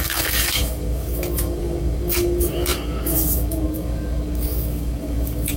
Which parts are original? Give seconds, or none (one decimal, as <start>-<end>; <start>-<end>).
none

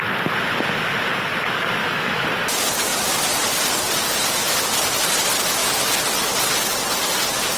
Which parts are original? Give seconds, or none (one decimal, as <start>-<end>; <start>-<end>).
0.0-1.8; 2.3-7.6

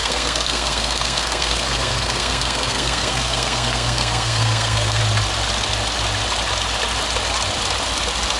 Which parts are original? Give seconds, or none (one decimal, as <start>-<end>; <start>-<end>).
5.0-8.4